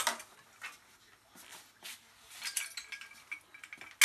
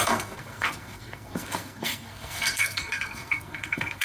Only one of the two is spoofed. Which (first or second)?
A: second